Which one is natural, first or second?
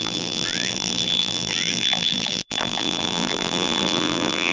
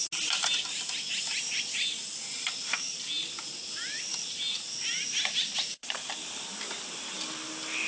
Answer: second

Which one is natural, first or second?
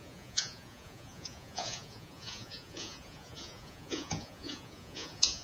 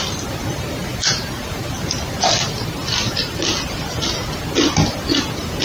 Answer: second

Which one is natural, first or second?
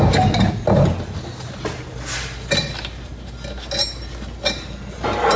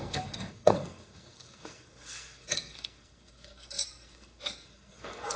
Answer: first